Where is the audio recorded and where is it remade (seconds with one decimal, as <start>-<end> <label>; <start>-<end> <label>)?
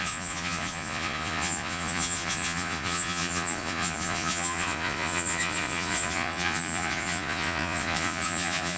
0.0-8.8 remade